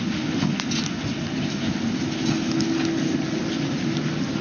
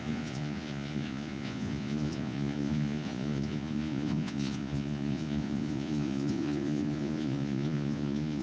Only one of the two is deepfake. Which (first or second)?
second